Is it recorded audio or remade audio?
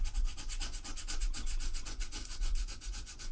remade